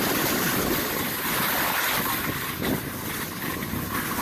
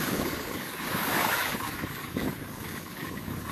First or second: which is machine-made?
second